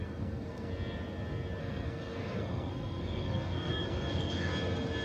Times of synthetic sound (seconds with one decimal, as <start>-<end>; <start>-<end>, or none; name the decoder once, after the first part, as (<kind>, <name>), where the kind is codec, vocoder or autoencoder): 0.0-0.7 (codec, SNAC); 1.6-4.5